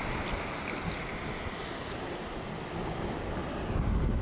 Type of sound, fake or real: real